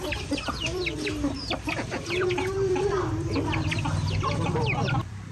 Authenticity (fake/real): fake